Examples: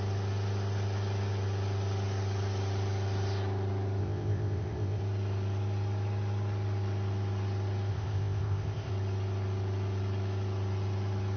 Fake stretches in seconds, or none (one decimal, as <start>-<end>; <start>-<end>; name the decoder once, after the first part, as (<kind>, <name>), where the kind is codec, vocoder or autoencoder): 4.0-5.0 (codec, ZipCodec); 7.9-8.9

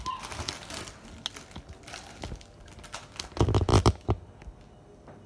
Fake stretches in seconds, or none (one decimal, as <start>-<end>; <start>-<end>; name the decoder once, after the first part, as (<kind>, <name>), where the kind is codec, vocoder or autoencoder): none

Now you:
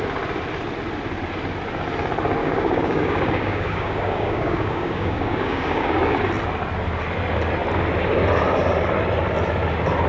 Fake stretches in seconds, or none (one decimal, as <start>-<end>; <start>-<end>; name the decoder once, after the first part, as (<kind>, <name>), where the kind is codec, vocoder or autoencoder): 2.4-6.2 (codec, DAC)

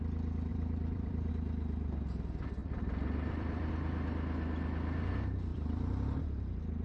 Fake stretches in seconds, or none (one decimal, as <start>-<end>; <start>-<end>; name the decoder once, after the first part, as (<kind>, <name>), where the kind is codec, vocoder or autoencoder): 0.5-1.3 (vocoder, BigVGAN v2); 2.6-3.7; 5.5-6.2

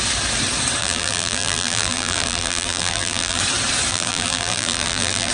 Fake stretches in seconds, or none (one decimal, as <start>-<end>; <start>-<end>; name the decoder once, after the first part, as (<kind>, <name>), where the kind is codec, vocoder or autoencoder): 0.8-3.4 (vocoder, BigVGAN v2); 3.9-5.3

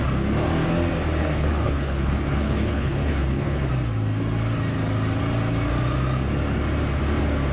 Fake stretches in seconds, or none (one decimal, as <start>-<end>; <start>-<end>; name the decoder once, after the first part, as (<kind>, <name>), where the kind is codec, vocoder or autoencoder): 1.2-3.7 (codec, HILCodec)